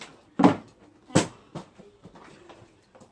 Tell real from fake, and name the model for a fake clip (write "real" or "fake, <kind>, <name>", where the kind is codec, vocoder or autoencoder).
real